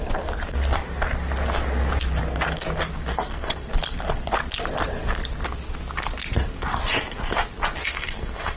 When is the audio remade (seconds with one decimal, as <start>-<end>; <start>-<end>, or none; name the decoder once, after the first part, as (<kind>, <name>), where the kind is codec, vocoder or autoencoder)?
3.1-3.7 (codec, SNAC); 7.8-8.6